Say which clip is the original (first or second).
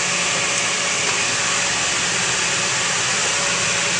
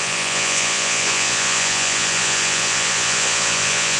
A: first